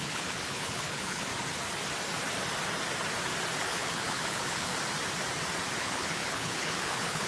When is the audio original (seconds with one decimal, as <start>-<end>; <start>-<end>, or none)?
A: 1.3-3.6; 4.7-5.8